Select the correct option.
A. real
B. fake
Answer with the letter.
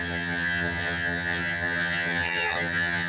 B